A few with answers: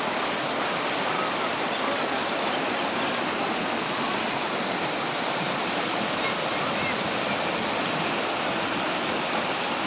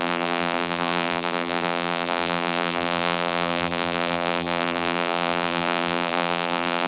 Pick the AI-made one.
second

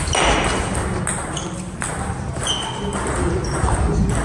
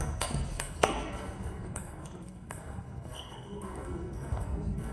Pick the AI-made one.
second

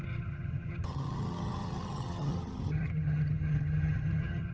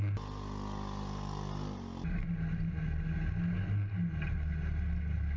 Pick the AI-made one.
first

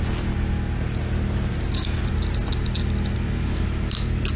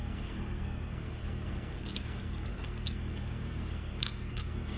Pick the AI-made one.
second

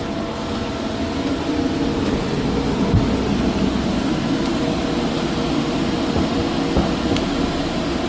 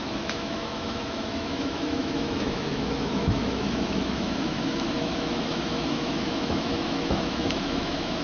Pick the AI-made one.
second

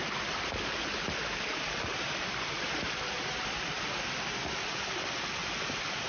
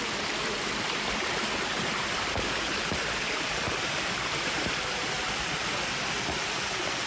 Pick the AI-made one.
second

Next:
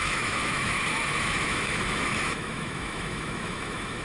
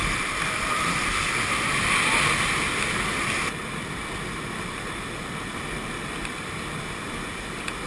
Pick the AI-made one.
first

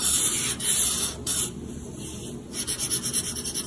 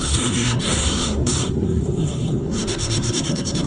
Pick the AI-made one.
second